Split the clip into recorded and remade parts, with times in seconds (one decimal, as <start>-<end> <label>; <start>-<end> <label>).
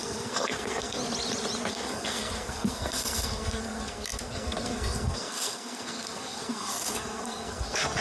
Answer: 0.0-1.0 remade; 1.0-1.7 recorded; 1.7-8.0 remade